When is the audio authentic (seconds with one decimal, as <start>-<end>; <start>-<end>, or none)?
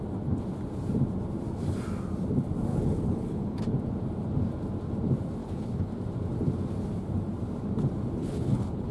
0.0-2.7; 3.6-5.4; 5.9-8.2